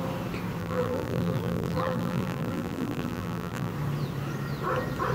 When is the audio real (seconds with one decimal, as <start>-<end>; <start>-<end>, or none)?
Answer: 0.0-0.6; 3.7-5.1